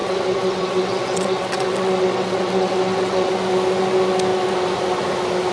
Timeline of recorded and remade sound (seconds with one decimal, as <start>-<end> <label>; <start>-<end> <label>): 0.0-3.3 remade; 3.3-5.5 recorded